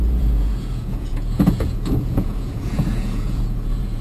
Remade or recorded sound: remade